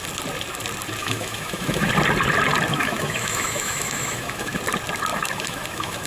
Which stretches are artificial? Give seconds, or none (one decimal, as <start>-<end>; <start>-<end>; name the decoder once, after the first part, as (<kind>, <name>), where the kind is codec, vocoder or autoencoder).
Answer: 1.0-1.9 (autoencoder, DAC-VAE); 2.7-4.6; 5.1-6.1